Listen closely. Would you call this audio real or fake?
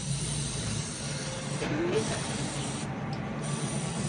fake